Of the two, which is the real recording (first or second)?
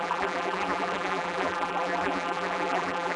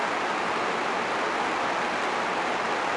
second